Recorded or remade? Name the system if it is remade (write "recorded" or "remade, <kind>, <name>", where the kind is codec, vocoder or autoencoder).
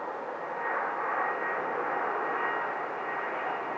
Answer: recorded